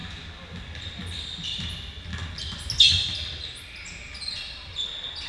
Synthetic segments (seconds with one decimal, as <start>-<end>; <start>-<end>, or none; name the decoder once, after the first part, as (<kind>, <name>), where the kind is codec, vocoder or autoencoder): none

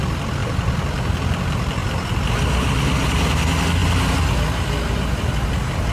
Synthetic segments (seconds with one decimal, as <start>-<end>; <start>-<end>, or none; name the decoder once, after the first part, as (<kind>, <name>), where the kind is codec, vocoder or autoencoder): none

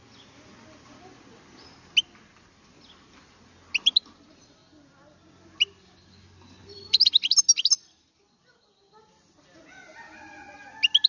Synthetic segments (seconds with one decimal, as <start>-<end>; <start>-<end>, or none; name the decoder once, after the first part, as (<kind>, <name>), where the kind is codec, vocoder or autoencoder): none

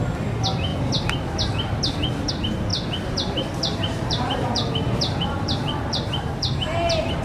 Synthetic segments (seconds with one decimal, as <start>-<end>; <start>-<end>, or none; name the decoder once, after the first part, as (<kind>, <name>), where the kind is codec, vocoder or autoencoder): 2.7-7.2 (vocoder, BigVGAN v2)